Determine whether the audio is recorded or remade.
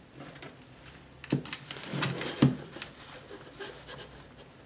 recorded